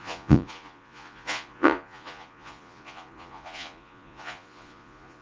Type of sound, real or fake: fake